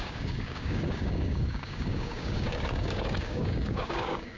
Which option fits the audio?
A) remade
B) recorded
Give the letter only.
A